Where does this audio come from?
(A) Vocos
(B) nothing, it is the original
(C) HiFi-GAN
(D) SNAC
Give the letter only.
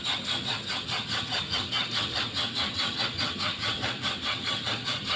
C